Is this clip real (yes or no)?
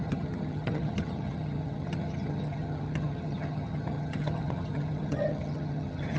no